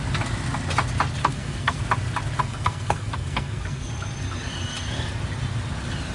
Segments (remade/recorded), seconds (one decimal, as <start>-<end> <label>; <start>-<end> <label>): 0.0-1.2 recorded; 1.2-1.8 remade; 1.8-2.4 recorded; 2.4-3.9 remade; 3.9-6.1 recorded